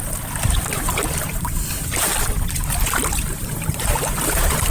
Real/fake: fake